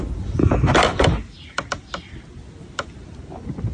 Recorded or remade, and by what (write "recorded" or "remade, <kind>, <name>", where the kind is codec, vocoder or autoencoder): recorded